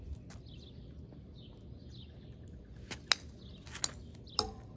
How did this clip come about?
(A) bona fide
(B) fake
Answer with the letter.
A